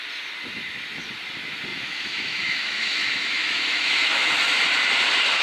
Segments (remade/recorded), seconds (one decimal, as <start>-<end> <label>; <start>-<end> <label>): 0.0-1.7 recorded; 1.7-4.3 remade; 4.3-5.4 recorded